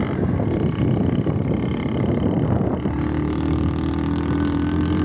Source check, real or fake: real